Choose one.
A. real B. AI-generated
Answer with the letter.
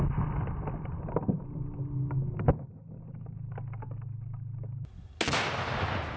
A